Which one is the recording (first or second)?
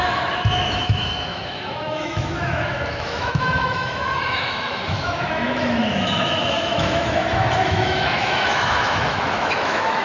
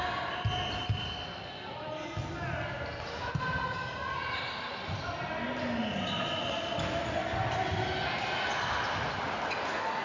second